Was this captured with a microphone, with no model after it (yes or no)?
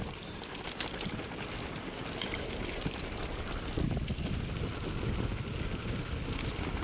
yes